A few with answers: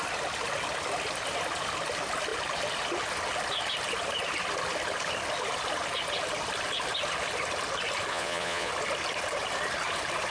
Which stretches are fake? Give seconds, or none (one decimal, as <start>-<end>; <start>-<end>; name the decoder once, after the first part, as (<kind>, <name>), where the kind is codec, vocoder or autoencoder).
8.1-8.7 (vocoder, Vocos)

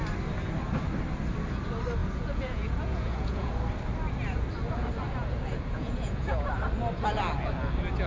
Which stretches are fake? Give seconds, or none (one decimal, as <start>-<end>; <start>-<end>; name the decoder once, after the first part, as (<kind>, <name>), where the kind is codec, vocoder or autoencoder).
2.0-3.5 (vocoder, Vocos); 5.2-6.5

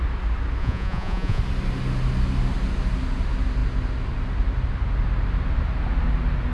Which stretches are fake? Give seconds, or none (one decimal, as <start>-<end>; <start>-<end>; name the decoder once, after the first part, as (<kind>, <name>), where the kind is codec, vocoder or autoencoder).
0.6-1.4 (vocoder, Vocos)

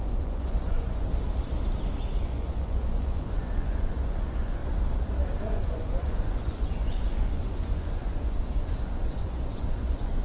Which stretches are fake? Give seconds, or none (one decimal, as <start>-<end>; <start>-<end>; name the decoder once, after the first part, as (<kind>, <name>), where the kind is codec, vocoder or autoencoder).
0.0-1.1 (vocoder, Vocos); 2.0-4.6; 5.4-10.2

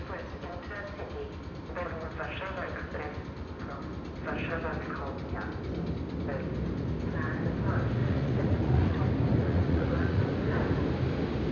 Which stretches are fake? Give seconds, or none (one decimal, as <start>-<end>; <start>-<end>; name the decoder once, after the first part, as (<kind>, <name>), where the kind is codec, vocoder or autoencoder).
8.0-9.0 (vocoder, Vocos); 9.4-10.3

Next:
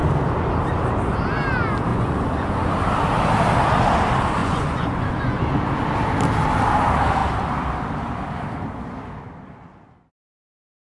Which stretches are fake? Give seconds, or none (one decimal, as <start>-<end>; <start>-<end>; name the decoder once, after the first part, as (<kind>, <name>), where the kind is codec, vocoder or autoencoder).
1.9-2.7 (vocoder, Vocos); 4.4-5.4

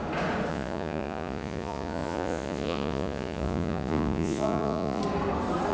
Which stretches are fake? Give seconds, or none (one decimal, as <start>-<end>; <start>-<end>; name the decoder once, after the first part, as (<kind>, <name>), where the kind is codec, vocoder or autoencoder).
0.5-5.0 (vocoder, Vocos)